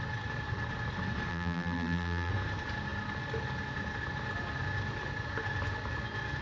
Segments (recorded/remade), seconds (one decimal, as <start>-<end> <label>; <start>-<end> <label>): 0.0-1.3 recorded; 1.3-2.3 remade; 2.3-6.4 recorded